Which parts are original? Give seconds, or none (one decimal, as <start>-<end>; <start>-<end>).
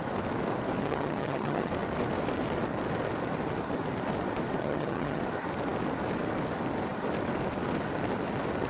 0.0-0.8; 1.7-4.6; 5.2-8.7